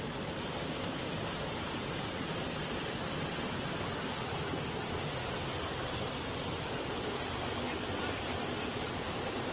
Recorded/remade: recorded